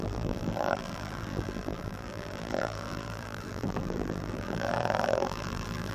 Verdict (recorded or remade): remade